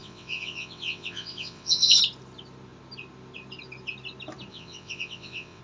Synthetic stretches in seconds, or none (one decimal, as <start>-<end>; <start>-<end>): 0.0-2.0; 4.5-5.6